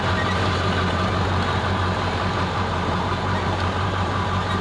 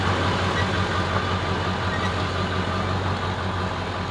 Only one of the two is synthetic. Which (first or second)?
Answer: first